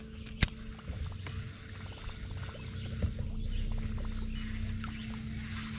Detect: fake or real real